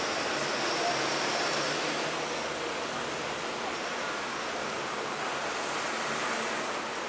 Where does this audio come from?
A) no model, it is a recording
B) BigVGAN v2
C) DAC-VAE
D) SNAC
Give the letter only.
A